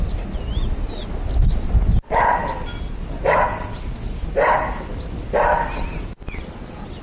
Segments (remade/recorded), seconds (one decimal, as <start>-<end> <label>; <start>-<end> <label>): 0.0-7.0 recorded